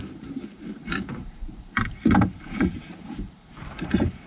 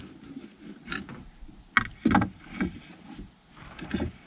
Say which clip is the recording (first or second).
second